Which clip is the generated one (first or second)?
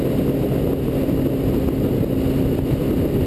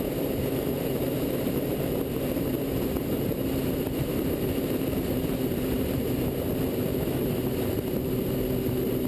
second